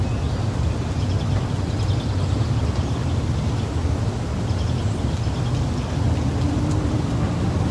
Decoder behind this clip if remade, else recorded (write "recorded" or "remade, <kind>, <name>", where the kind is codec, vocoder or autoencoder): recorded